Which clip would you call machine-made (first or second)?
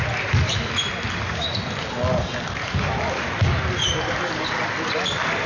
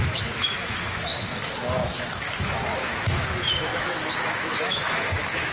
second